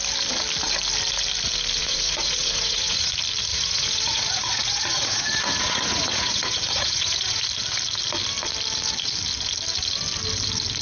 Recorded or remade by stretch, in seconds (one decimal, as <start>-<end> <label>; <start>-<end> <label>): 0.0-1.8 recorded; 1.8-3.1 remade; 3.1-3.5 recorded; 3.5-7.4 remade; 7.4-10.8 recorded

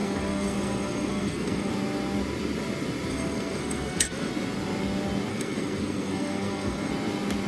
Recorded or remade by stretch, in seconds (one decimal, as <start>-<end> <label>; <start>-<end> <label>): 0.0-1.7 remade; 1.7-3.1 recorded; 3.1-4.3 remade; 4.3-5.3 recorded; 5.3-6.9 remade; 6.9-7.5 recorded

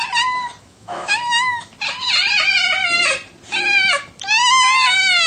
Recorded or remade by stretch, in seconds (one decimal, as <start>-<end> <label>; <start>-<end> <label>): 0.0-0.6 recorded; 0.6-1.7 remade; 1.7-5.3 recorded

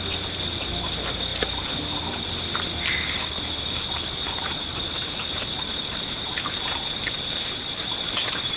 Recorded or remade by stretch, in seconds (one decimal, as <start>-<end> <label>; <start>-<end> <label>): 0.0-1.3 recorded; 1.3-6.5 remade; 6.5-8.6 recorded

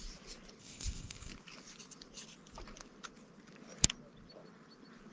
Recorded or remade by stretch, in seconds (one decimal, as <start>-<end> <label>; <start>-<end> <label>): 0.0-0.6 recorded; 0.6-1.3 remade; 1.3-5.1 recorded